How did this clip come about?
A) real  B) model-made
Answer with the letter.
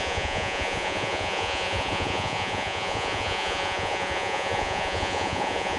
B